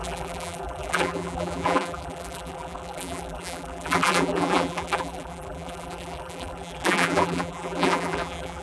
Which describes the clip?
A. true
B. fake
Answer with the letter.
B